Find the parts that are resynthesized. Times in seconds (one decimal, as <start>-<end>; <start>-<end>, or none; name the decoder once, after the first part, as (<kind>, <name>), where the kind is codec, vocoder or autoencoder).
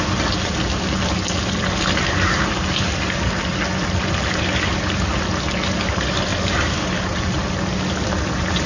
none